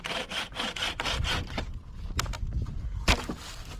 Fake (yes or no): no